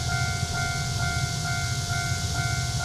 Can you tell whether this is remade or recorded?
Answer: recorded